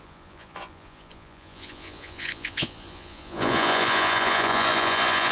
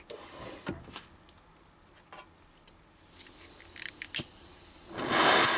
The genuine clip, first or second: second